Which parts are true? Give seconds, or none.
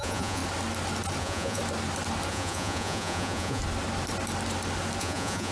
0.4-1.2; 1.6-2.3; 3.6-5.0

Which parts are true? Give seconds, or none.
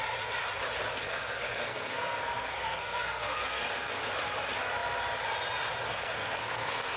0.0-1.0; 4.0-5.9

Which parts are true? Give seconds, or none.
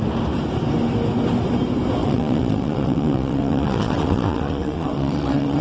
0.0-2.0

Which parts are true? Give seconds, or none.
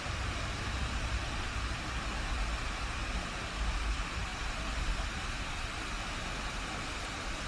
0.0-7.5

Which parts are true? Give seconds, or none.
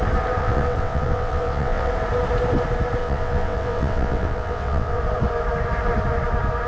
0.0-0.4; 1.9-3.0; 5.0-6.7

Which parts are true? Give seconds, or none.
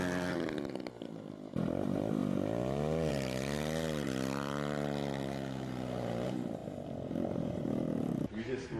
0.0-8.8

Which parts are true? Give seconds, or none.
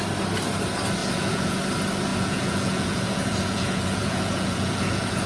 0.0-1.0; 1.6-2.1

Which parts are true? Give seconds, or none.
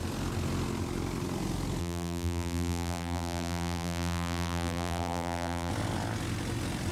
0.0-1.8; 5.7-6.9